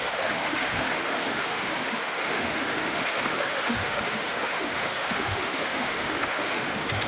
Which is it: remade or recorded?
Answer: remade